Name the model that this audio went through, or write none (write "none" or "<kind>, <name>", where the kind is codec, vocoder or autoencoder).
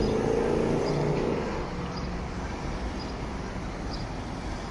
none